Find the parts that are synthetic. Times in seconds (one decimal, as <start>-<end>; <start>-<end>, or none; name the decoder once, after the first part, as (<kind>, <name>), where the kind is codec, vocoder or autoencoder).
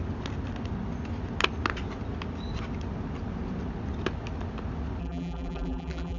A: 5.0-6.2 (vocoder, BigVGAN v2)